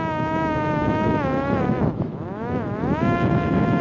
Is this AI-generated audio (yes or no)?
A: yes